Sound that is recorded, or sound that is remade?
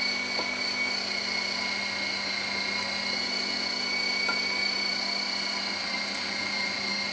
recorded